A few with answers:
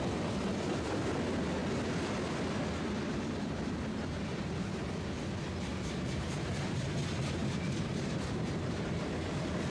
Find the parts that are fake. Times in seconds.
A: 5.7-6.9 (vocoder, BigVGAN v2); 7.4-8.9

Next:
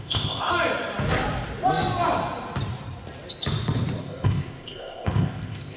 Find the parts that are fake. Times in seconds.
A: 0.0-0.5 (codec, ZipCodec); 4.0-5.8

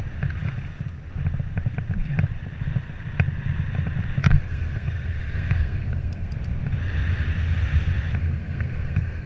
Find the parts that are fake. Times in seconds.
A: 4.2-6.3 (codec, SNAC); 8.2-9.3

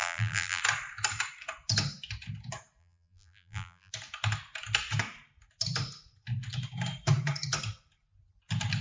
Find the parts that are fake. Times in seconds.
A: 0.0-0.6 (vocoder, BigVGAN v2); 2.8-3.9

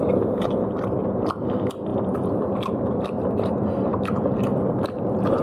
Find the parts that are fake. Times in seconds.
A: 1.9-3.5 (vocoder, BigVGAN v2)

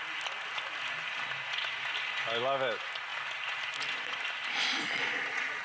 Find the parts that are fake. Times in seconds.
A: none